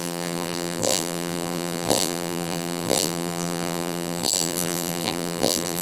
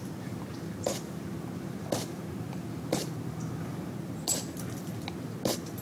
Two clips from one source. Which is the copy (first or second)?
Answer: first